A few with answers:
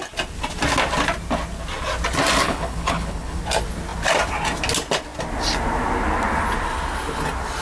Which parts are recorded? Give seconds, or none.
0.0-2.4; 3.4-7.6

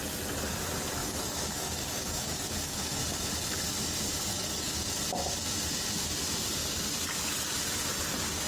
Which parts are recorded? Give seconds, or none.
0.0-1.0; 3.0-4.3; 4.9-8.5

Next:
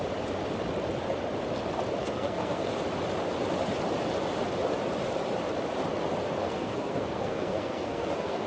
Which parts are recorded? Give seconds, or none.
0.0-2.0; 2.7-6.4

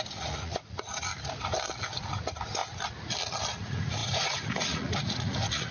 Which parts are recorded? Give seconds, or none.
1.1-2.0; 2.6-3.5

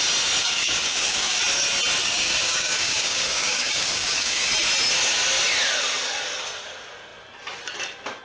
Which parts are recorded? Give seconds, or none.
0.0-0.4; 1.4-2.0; 4.5-8.2